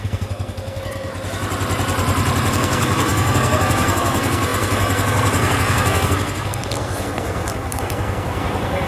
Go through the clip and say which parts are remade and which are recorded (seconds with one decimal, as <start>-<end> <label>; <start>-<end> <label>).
0.0-1.1 remade; 1.1-2.5 recorded; 2.5-8.9 remade